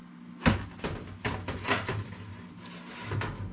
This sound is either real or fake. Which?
real